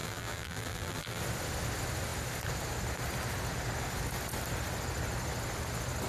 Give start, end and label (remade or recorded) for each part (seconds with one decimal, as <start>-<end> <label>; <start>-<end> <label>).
0.0-1.2 remade; 1.2-6.1 recorded